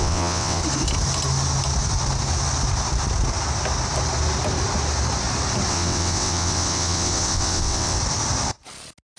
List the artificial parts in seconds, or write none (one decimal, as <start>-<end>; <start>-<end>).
0.0-0.6; 5.7-8.0